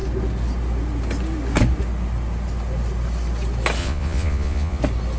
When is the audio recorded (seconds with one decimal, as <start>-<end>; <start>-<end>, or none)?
0.0-3.8; 4.8-5.2